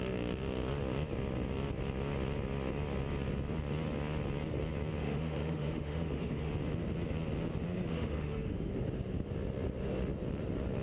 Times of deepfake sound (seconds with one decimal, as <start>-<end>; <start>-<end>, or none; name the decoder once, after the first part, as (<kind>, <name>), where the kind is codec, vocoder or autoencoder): 5.0-6.5 (autoencoder, DAC-VAE); 7.9-8.7